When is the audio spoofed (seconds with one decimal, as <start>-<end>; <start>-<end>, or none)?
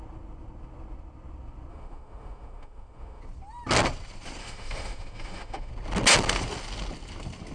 1.7-3.2; 4.4-5.7